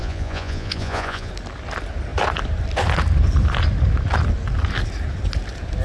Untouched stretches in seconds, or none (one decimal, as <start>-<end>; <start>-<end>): 1.3-5.8